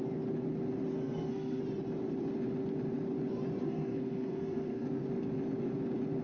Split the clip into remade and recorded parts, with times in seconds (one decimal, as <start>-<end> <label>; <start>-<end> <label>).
0.0-0.9 recorded; 0.9-1.6 remade; 1.6-3.6 recorded; 3.6-5.0 remade; 5.0-6.2 recorded